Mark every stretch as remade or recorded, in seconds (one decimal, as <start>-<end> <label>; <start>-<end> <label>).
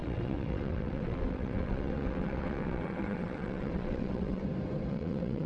0.0-4.4 remade; 4.4-4.9 recorded; 4.9-5.5 remade